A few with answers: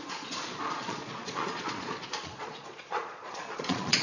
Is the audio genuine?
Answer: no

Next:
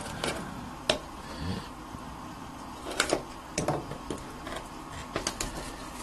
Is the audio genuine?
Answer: yes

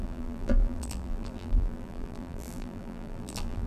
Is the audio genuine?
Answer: no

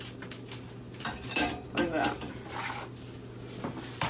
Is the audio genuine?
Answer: yes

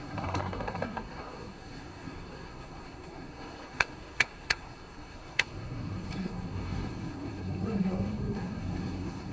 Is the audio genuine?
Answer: no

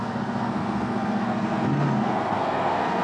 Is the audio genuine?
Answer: no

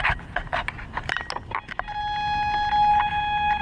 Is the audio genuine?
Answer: yes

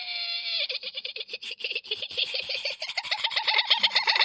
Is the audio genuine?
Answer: no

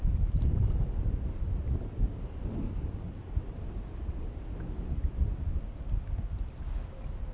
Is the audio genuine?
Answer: yes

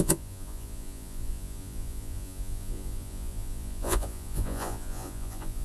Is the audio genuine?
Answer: no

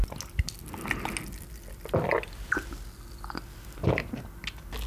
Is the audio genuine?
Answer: yes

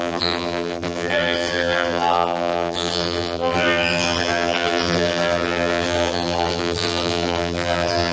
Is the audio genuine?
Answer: no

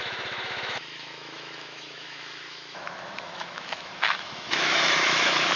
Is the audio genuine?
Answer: no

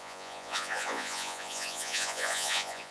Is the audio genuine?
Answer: no